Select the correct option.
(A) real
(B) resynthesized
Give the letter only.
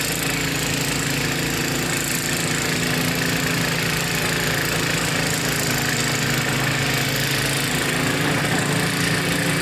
A